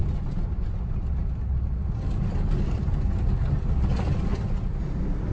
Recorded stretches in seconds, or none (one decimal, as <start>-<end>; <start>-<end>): 0.0-5.3